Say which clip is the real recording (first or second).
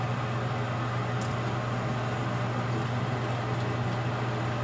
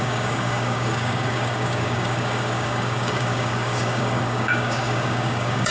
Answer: first